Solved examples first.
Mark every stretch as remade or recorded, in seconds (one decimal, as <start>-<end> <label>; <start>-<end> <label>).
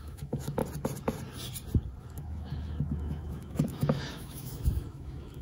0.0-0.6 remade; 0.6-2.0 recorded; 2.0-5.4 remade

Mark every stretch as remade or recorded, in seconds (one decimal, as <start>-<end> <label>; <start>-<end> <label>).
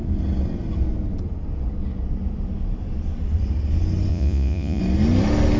0.0-4.1 recorded; 4.1-4.8 remade; 4.8-5.6 recorded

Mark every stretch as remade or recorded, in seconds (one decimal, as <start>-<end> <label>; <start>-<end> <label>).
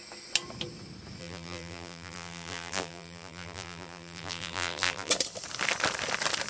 0.0-1.2 recorded; 1.2-5.1 remade; 5.1-6.5 recorded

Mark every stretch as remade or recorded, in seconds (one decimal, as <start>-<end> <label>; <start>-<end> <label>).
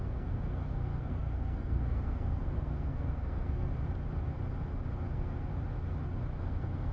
0.0-3.7 remade; 3.7-5.1 recorded; 5.1-5.5 remade; 5.5-6.4 recorded; 6.4-6.9 remade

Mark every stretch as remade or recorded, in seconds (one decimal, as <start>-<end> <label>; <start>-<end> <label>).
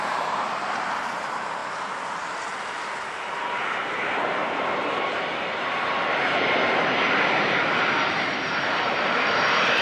0.0-9.8 remade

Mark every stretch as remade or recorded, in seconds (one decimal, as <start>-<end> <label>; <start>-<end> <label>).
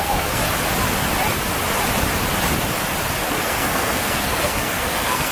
0.0-0.4 remade; 0.4-3.3 recorded; 3.3-5.3 remade